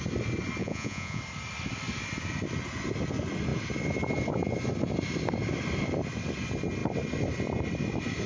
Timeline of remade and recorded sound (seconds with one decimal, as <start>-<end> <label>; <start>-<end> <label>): 0.0-0.6 recorded; 0.6-1.2 remade; 1.2-8.3 recorded